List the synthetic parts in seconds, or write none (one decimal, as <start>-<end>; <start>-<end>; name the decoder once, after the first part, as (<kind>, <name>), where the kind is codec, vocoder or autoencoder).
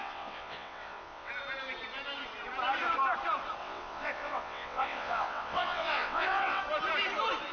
0.0-1.3 (vocoder, WaveNeXt); 3.6-6.6